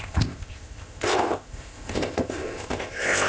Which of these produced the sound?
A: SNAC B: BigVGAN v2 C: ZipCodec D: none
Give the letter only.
C